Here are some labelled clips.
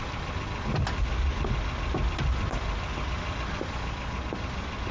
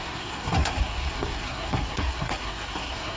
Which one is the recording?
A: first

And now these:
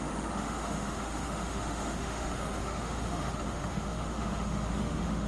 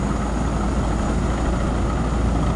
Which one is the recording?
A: second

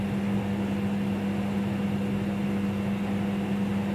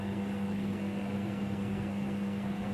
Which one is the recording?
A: first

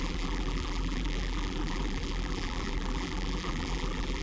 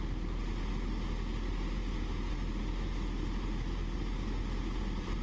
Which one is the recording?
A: second